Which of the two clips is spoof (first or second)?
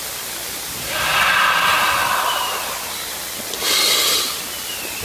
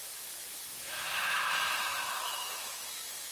second